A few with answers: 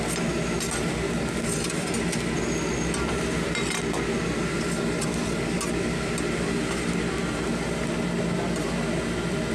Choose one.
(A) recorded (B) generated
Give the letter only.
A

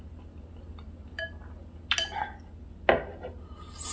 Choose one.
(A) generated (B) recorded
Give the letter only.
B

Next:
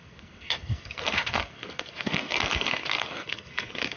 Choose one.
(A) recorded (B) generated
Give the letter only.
B